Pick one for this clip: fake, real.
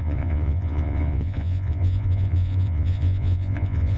fake